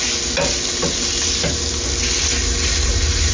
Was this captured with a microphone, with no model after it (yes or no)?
yes